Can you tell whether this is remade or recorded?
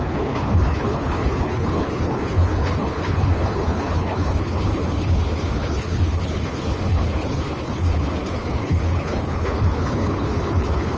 remade